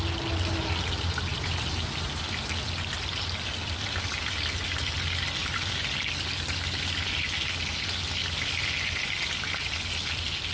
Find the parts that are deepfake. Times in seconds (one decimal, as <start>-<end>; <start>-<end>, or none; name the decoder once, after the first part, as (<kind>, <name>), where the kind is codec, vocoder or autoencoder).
1.3-2.2 (vocoder, BigVGAN v2); 5.4-6.0; 8.2-9.9